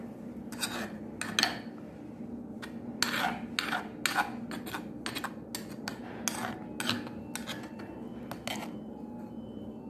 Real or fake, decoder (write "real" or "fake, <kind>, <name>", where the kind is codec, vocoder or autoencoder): real